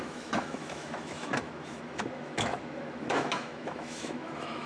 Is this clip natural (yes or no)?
no